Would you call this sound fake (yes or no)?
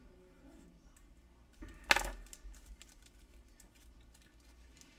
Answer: no